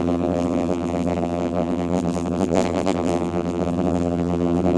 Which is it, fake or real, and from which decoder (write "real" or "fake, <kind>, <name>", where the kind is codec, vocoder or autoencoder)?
fake, vocoder, BigVGAN v2